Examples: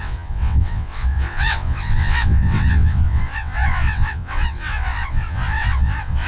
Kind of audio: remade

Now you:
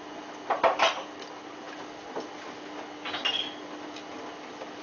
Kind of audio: recorded